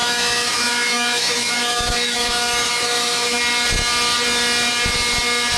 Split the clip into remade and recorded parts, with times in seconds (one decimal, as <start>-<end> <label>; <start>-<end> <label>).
0.0-3.4 remade; 3.4-5.6 recorded